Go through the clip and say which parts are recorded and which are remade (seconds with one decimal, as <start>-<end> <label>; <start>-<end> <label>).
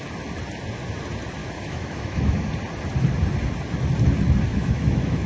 0.0-1.4 recorded; 1.4-2.5 remade; 2.5-4.5 recorded; 4.5-5.3 remade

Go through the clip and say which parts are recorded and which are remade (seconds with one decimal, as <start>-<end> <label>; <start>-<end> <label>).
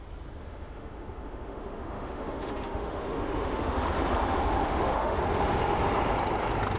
0.0-0.4 recorded; 0.4-3.8 remade; 3.8-4.6 recorded; 4.6-5.2 remade; 5.2-6.8 recorded